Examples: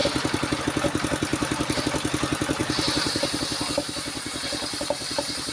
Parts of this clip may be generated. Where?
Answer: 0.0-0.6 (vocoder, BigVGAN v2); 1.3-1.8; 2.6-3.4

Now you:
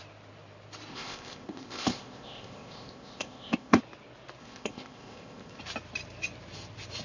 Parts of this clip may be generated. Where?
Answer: 0.9-3.8 (codec, ZipCodec); 4.4-5.6